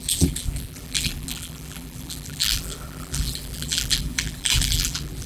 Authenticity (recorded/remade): remade